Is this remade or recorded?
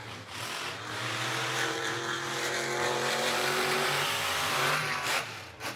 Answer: remade